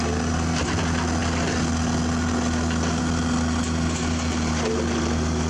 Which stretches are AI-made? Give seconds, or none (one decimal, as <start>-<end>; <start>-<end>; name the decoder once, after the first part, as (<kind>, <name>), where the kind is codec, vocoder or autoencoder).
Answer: none